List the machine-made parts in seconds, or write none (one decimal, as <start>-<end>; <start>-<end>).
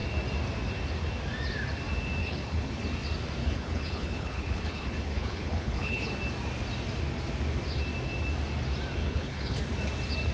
2.2-2.8; 3.4-6.1; 9.0-9.6